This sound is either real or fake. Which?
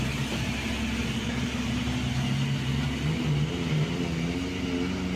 real